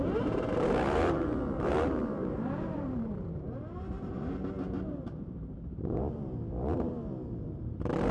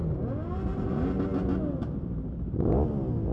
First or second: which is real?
second